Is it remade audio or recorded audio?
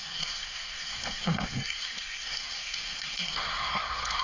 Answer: remade